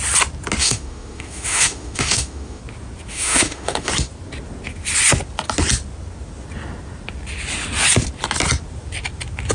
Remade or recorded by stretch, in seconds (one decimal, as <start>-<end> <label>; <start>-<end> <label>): 0.0-0.6 recorded; 0.6-2.6 remade; 2.6-3.1 recorded; 3.1-3.9 remade; 3.9-9.5 recorded